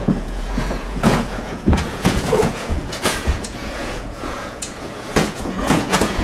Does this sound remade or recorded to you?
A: remade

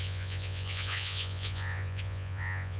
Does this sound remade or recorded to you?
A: remade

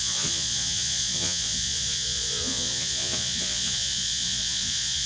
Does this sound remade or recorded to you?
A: remade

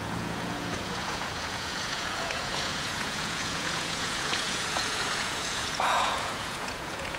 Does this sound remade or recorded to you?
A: remade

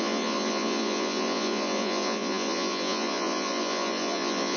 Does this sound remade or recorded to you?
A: remade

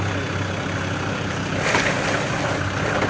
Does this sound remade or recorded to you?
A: recorded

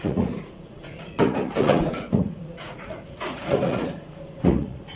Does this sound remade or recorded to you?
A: remade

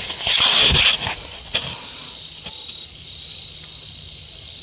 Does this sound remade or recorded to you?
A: recorded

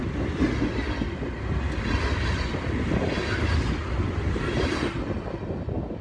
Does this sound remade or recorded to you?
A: recorded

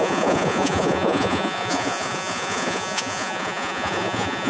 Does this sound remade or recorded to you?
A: remade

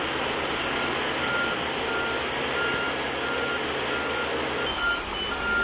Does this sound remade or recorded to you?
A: recorded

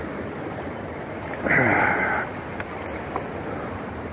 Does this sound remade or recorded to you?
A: recorded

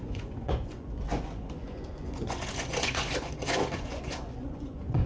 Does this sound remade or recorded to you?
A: remade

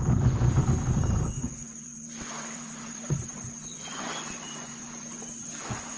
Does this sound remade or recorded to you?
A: remade